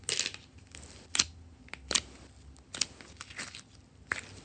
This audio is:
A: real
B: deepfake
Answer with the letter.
A